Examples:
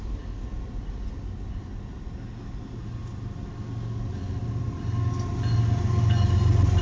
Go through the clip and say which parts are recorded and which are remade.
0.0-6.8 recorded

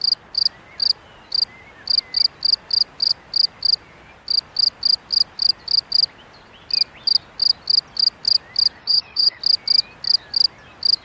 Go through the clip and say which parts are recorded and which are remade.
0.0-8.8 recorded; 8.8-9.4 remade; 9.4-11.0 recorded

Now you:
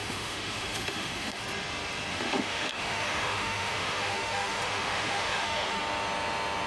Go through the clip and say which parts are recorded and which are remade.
0.0-1.4 remade; 1.4-2.1 recorded; 2.1-5.8 remade; 5.8-6.7 recorded

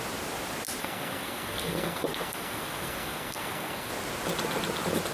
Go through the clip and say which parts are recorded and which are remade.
0.0-0.8 recorded; 0.8-3.9 remade; 3.9-5.1 recorded

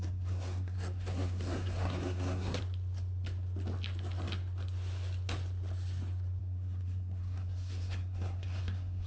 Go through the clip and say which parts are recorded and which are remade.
0.0-2.6 remade; 2.6-6.4 recorded; 6.4-9.1 remade

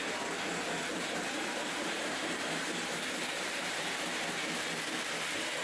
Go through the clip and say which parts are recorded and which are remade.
0.0-0.9 recorded; 0.9-4.2 remade; 4.2-5.6 recorded